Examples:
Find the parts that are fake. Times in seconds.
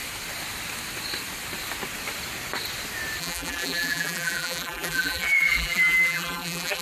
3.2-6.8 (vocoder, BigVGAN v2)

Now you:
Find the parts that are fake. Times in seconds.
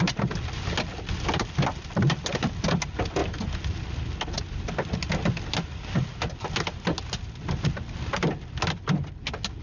none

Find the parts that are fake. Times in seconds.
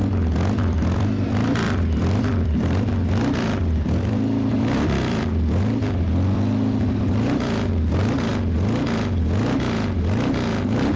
0.6-8.3 (vocoder, BigVGAN v2)